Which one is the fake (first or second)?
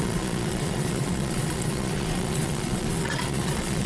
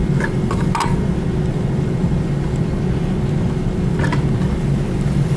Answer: first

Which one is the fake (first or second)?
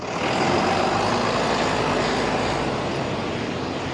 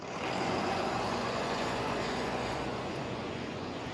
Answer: second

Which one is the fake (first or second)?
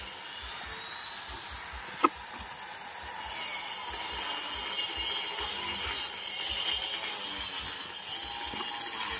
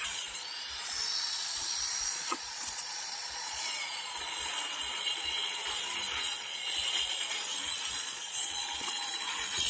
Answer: second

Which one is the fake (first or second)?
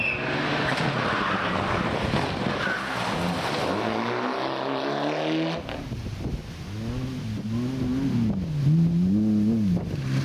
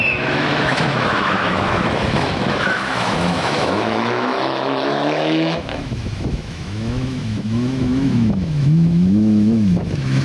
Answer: second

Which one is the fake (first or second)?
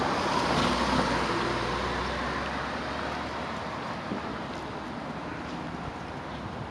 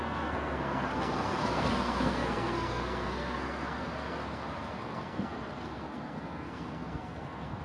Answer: second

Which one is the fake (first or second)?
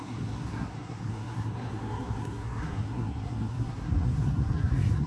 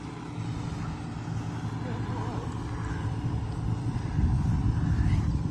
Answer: first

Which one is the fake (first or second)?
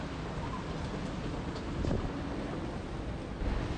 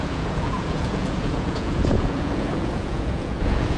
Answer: second